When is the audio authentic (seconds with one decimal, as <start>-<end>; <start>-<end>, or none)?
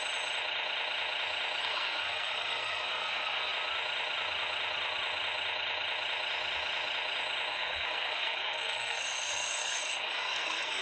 0.0-1.6; 3.5-7.5